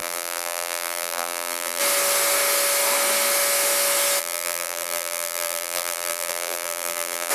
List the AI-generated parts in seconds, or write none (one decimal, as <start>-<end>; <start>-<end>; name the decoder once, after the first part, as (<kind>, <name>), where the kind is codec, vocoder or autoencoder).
0.0-1.8 (vocoder, BigVGAN v2); 4.2-7.3

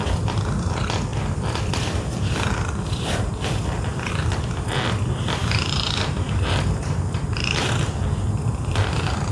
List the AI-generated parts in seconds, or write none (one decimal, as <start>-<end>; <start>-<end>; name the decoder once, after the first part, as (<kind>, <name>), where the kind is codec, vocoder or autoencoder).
5.4-7.7 (vocoder, BigVGAN v2)

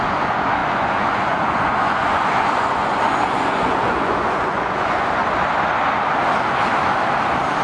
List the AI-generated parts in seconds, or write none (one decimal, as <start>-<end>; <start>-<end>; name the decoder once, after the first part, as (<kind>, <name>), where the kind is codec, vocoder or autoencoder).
0.0-5.2 (vocoder, Vocos)

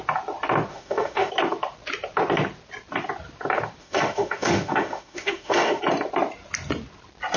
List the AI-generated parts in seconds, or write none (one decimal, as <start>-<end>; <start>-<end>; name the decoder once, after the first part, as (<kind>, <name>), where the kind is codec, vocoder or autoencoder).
0.7-1.3 (autoencoder, DAC-VAE); 3.8-5.8